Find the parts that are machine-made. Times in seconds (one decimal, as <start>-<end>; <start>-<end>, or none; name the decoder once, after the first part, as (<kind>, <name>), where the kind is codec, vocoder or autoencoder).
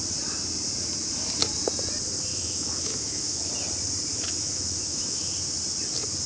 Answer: 2.3-3.5 (autoencoder, DAC-VAE); 4.1-5.2